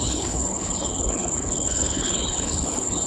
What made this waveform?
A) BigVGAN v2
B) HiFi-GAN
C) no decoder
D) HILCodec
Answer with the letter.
D